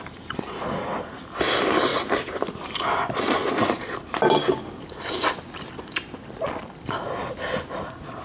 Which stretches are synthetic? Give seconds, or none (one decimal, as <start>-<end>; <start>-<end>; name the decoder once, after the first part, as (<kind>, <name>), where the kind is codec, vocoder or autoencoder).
none